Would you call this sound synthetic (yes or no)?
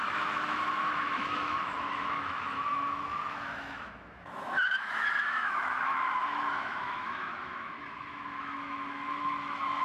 yes